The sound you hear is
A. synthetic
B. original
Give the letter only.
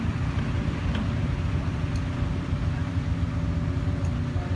B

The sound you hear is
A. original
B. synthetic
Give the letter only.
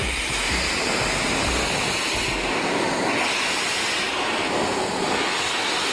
A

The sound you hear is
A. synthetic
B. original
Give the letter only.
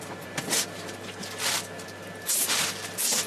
B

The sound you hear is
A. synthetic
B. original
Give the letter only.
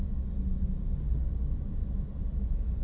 B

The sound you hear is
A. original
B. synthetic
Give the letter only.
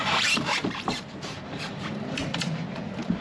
B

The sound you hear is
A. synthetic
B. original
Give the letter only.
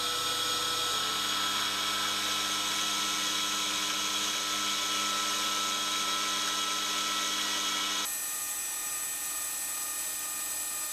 B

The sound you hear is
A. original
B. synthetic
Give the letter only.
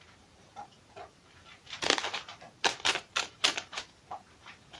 B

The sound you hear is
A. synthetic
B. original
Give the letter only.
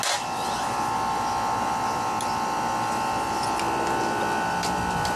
B